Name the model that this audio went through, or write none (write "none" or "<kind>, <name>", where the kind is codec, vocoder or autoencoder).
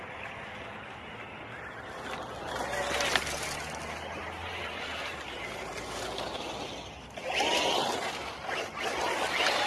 none